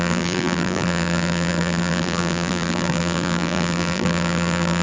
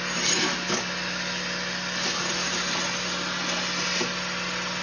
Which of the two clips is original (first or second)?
second